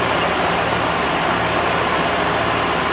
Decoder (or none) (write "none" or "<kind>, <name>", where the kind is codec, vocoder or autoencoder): none